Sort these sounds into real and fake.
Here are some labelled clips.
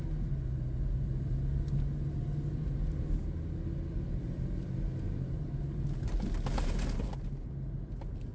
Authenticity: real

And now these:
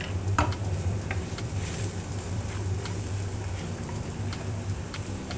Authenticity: fake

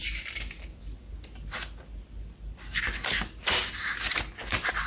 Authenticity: real